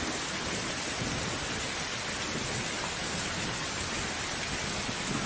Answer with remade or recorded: recorded